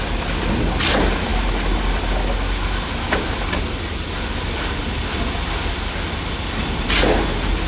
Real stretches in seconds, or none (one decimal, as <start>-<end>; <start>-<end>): 0.0-7.7